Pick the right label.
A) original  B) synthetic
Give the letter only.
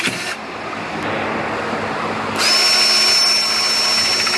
A